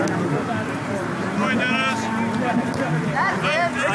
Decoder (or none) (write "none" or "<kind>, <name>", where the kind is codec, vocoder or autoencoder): none